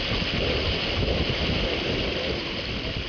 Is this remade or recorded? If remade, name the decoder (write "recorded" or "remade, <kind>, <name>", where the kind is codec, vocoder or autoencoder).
recorded